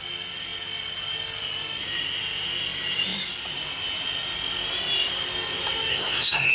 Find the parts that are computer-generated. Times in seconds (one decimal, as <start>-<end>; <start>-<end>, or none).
5.9-6.5